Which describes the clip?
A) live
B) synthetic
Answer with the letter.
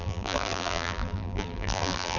B